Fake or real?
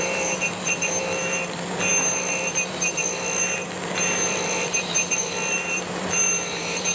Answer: fake